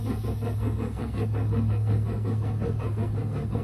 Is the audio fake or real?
fake